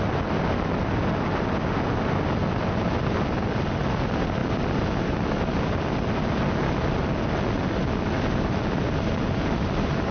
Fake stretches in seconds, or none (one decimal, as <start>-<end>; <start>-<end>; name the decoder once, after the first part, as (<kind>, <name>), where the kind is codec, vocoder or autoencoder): none